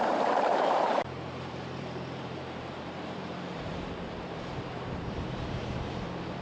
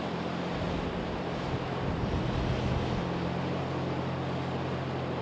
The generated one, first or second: first